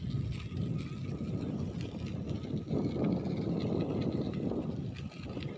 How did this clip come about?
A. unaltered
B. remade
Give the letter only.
A